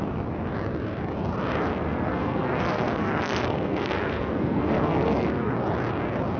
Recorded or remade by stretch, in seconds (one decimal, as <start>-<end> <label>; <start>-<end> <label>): 0.0-1.7 recorded; 1.7-5.5 remade; 5.5-6.4 recorded